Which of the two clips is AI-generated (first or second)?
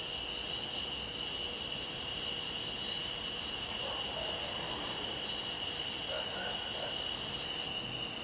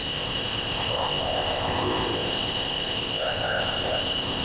second